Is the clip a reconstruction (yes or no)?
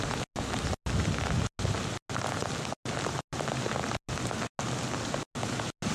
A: no